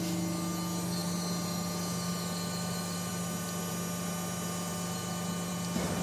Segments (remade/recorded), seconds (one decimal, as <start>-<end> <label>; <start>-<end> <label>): 0.0-6.0 recorded